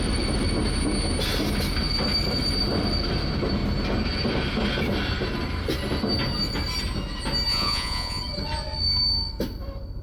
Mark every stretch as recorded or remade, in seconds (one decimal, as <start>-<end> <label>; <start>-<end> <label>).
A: 0.0-7.5 recorded; 7.5-8.2 remade; 8.2-10.0 recorded